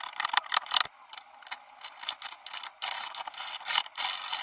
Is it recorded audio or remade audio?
recorded